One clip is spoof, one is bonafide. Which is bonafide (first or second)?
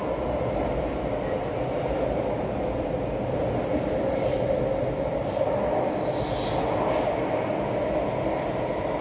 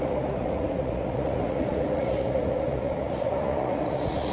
first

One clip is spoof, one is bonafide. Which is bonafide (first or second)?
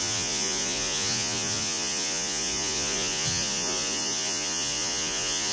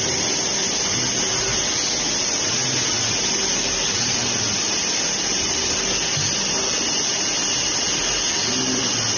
second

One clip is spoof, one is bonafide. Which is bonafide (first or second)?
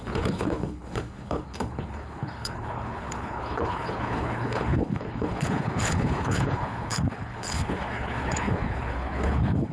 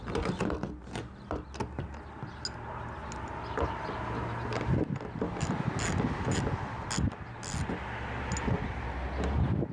second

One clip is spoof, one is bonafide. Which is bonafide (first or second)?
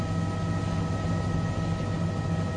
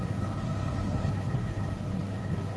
first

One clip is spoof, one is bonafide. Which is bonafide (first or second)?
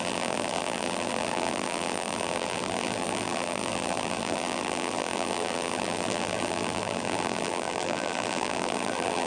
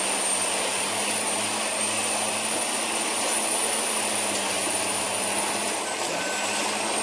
second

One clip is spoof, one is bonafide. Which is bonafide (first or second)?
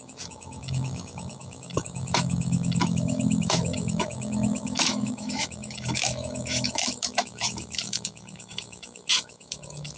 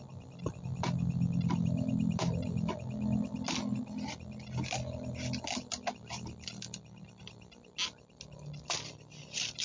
second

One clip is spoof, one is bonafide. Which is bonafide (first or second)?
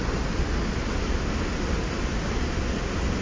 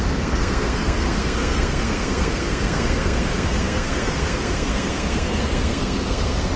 first